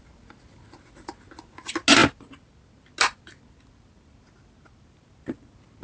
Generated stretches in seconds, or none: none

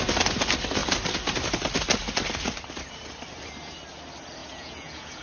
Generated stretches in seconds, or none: 4.4-5.2 (vocoder, Vocos)

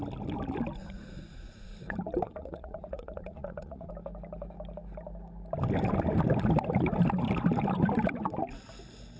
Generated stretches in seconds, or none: 0.8-3.9 (vocoder, Vocos)